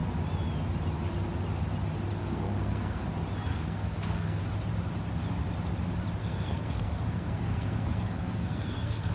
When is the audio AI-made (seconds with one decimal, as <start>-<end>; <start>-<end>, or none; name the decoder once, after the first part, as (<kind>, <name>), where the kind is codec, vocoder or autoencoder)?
2.2-3.0 (codec, SNAC); 3.5-4.4; 6.2-9.1